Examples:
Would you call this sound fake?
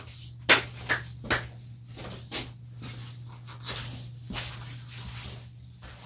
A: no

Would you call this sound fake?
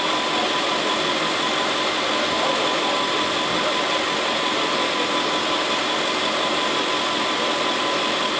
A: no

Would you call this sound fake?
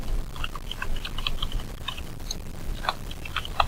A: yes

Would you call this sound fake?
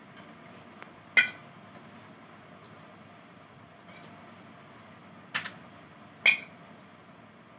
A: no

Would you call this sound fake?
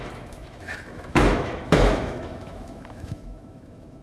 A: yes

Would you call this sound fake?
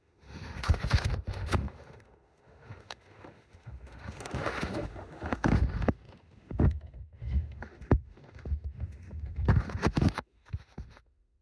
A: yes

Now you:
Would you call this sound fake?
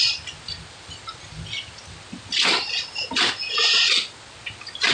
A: no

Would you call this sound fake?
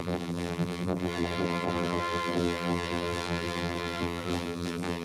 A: yes